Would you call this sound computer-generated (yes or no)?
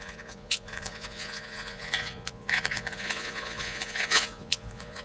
yes